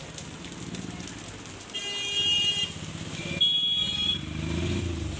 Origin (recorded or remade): recorded